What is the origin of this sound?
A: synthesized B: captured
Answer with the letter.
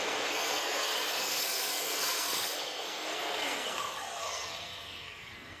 A